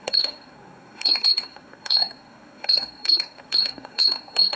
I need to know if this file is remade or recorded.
remade